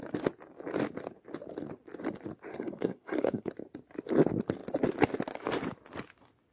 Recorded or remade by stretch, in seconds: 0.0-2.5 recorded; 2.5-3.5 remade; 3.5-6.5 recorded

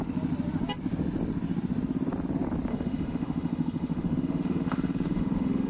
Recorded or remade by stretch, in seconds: 0.0-2.7 recorded; 2.7-5.7 remade

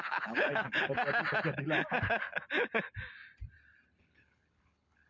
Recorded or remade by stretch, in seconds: 0.0-0.9 remade; 0.9-4.0 recorded; 4.0-5.1 remade

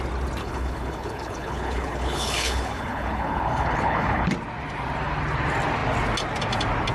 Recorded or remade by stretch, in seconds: 0.0-0.4 recorded; 0.4-4.3 remade; 4.3-6.9 recorded

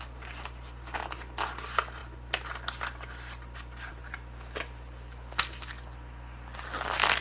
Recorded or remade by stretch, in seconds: 0.0-7.2 recorded

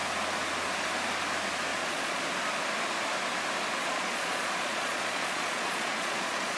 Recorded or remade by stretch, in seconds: 0.0-1.7 recorded; 1.7-2.2 remade; 2.2-3.8 recorded; 3.8-6.6 remade

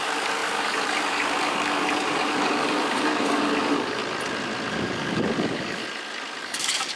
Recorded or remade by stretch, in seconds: 0.0-4.0 remade; 4.0-4.7 recorded; 4.7-5.8 remade; 5.8-6.4 recorded; 6.4-7.0 remade